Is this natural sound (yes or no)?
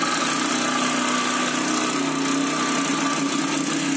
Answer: yes